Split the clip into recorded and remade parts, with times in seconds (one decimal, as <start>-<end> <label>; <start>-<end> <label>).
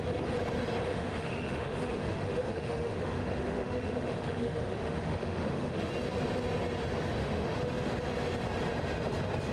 0.0-0.9 recorded; 0.9-5.9 remade; 5.9-7.2 recorded; 7.2-7.9 remade; 7.9-9.5 recorded